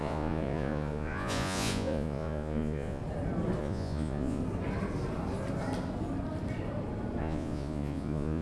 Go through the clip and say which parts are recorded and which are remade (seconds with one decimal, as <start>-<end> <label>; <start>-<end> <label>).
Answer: 0.0-3.0 remade; 3.0-3.6 recorded; 3.6-4.4 remade; 4.4-7.2 recorded; 7.2-8.4 remade